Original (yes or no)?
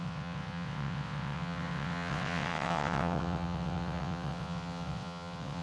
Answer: no